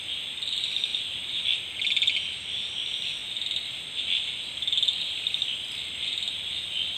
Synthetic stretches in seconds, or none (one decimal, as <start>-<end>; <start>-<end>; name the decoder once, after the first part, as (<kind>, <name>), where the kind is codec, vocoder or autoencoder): none